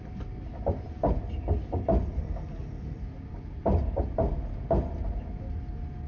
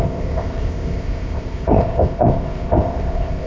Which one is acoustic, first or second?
first